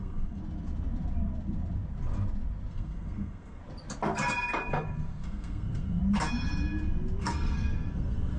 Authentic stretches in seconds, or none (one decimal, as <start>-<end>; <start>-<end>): 0.4-2.7; 3.6-4.7; 6.0-7.2